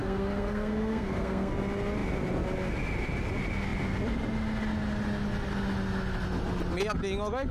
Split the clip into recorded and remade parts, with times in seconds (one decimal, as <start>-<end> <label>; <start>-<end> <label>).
0.0-1.5 remade; 1.5-7.5 recorded